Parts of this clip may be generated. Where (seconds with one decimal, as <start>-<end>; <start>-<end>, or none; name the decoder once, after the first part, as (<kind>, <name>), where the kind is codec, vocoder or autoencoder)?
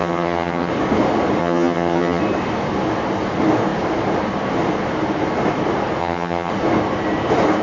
0.0-0.7 (vocoder, HiFi-GAN); 1.4-2.2; 6.0-6.5